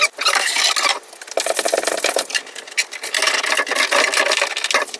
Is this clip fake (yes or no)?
no